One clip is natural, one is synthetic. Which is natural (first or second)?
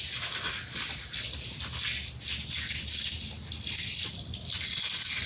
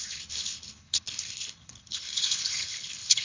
first